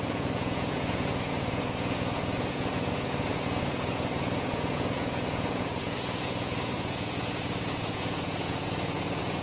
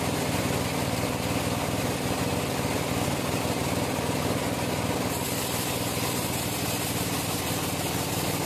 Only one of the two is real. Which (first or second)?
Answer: second